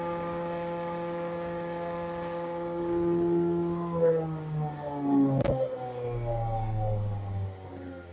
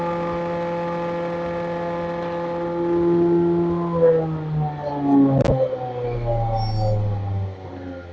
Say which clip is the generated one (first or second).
first